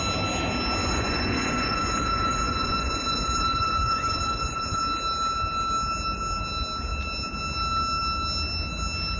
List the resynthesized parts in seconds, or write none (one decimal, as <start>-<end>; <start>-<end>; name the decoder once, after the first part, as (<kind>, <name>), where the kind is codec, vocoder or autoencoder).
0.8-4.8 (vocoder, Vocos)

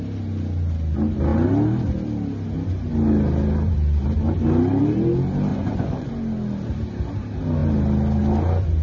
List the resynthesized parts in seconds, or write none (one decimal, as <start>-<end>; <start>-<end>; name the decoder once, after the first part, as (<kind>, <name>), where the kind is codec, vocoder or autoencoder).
5.5-6.1 (vocoder, Vocos)

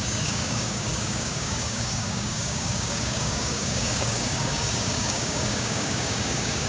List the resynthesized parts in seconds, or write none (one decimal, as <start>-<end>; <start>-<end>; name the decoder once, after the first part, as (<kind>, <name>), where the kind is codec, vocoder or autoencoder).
0.0-6.7 (codec, DAC)

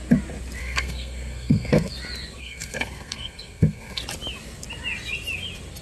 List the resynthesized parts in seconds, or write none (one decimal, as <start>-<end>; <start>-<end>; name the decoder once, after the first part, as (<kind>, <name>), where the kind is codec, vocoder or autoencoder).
0.6-1.9 (codec, SNAC); 2.4-4.0

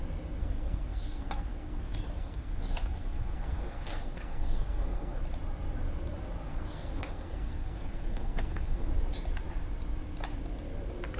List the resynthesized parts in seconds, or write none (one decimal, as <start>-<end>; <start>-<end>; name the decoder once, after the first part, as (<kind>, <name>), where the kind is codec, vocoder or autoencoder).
0.4-5.2 (codec, SNAC); 6.5-8.9

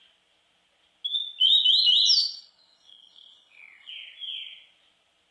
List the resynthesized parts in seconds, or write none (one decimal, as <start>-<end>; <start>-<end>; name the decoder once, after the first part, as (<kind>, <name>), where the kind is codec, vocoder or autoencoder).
2.2-3.9 (codec, HILCodec)

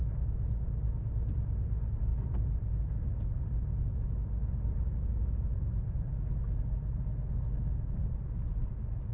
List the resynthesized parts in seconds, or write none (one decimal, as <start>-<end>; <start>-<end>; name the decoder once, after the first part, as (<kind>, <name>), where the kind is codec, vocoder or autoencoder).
none

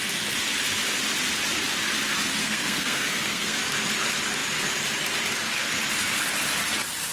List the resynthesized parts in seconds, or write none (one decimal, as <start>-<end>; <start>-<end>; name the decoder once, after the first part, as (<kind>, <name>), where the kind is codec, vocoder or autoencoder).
2.4-3.6 (codec, SNAC)